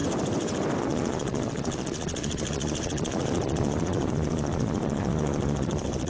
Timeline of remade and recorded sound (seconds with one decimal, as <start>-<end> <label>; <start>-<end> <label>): 0.0-0.8 recorded; 0.8-6.1 remade

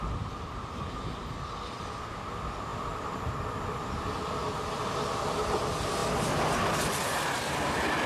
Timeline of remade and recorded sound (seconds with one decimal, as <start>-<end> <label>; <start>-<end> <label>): 0.0-8.1 recorded